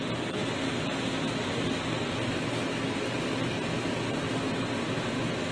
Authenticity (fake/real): real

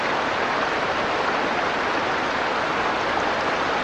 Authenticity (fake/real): real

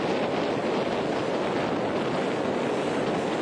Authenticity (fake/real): real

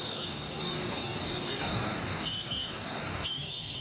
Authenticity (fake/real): fake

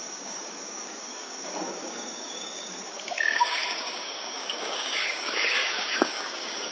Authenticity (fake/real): fake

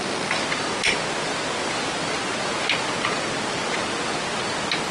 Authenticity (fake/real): real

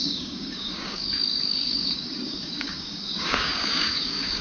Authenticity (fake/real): fake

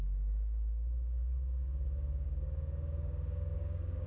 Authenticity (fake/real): fake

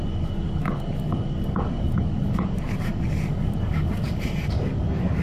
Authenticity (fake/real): fake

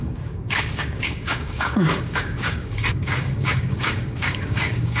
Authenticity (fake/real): fake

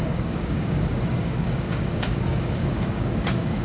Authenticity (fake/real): fake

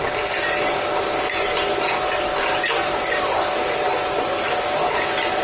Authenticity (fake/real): real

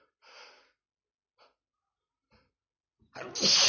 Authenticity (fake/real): real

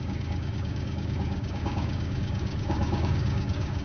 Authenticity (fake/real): fake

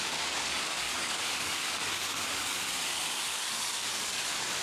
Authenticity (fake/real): fake